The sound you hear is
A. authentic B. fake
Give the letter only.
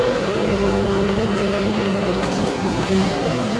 B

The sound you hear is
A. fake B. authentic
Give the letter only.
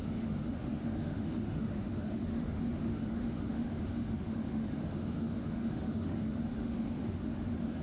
A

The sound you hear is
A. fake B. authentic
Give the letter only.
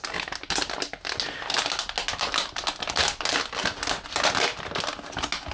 B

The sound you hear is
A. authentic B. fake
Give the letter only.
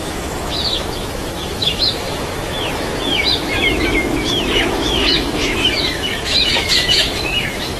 B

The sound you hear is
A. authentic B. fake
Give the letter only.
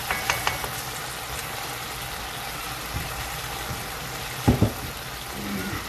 A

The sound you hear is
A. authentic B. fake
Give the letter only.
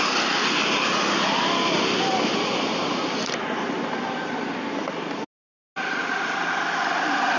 A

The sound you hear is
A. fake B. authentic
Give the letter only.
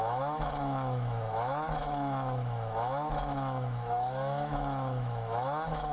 A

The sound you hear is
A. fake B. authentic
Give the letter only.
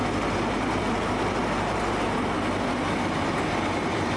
B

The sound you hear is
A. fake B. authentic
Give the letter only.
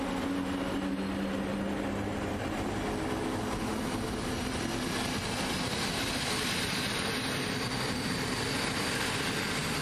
B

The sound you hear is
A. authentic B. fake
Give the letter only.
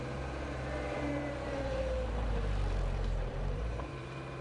B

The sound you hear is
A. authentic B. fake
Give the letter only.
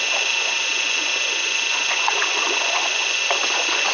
B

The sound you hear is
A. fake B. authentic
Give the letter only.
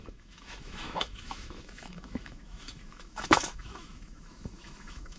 A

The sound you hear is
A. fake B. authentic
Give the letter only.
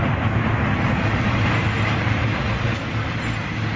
B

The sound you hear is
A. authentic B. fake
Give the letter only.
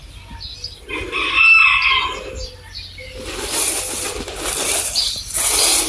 A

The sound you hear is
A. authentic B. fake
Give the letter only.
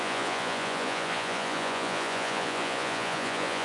B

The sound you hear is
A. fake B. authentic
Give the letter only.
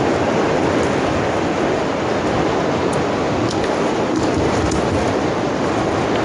B